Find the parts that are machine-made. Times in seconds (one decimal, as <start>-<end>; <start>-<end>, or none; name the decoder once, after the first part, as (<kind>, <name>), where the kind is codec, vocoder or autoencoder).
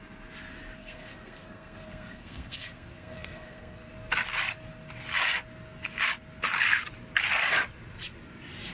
0.8-3.9 (codec, SNAC)